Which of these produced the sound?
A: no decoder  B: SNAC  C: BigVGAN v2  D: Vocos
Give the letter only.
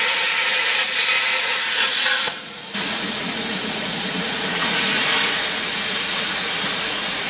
D